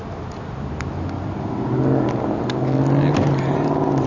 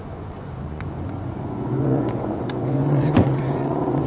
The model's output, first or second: second